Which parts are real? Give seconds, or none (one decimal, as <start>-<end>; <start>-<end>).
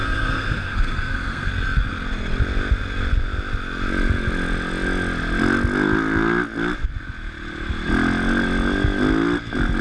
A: 1.5-9.8